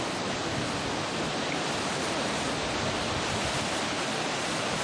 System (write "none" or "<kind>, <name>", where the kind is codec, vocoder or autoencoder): none